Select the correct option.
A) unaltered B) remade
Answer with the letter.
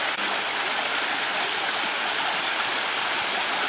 B